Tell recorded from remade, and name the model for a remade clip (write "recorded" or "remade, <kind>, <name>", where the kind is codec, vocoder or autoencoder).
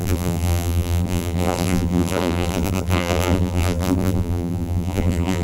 remade, vocoder, BigVGAN v2